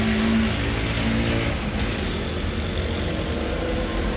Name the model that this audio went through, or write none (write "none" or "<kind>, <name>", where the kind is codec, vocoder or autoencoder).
none